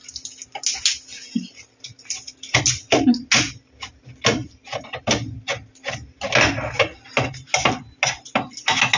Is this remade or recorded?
recorded